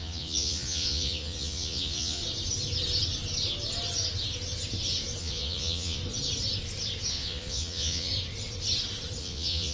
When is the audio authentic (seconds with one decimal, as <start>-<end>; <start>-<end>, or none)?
2.2-5.2; 6.0-7.1; 8.1-9.2